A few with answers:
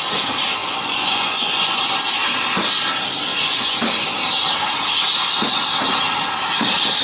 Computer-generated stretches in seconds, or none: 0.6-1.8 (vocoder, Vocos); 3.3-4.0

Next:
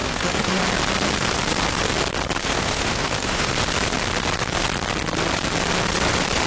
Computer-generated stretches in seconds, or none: 0.0-0.6 (autoencoder, DAC-VAE); 2.4-3.5

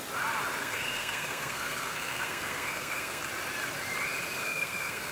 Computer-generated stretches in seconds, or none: 0.6-3.2 (codec, SNAC); 4.4-5.1

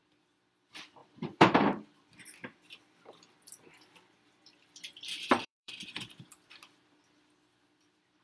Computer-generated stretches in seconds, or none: 1.0-5.7 (vocoder, BigVGAN v2)

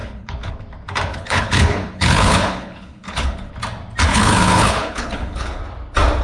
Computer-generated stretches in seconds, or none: 0.0-0.5 (codec, HILCodec); 1.1-3.5; 4.1-5.6